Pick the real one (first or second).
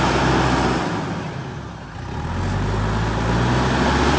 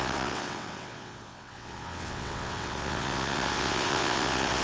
first